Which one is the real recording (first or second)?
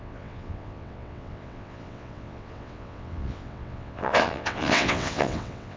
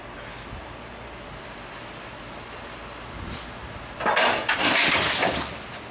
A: second